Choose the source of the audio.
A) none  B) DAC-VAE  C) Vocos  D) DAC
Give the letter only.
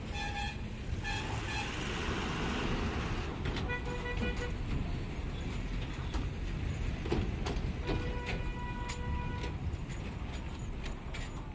A